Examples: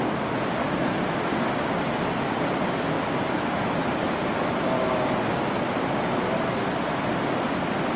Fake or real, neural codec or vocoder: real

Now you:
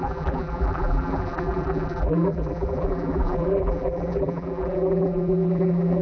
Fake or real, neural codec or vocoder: fake, vocoder, BigVGAN v2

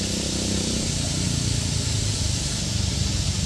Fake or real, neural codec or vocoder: real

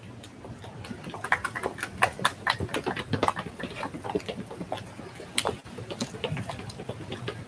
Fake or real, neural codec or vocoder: fake, vocoder, BigVGAN v2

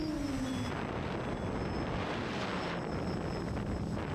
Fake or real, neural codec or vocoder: real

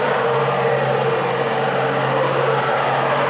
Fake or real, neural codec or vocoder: fake, vocoder, BigVGAN v2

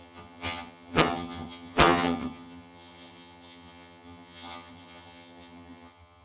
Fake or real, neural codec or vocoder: fake, vocoder, HiFi-GAN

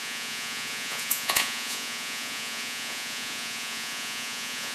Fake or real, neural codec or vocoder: fake, vocoder, Vocos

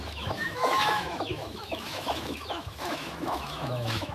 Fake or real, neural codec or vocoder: fake, autoencoder, DAC-VAE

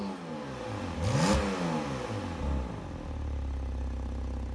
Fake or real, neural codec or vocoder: real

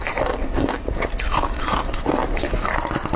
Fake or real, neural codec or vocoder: real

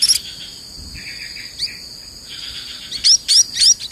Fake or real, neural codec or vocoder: real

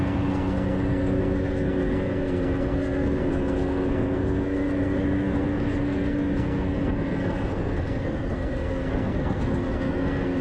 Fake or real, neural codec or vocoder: fake, codec, SNAC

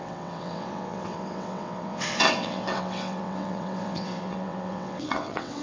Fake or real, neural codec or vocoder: fake, vocoder, WaveNeXt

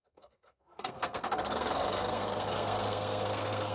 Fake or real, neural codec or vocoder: fake, codec, SNAC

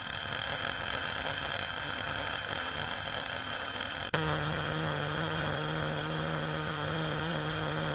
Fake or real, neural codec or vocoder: fake, vocoder, HiFi-GAN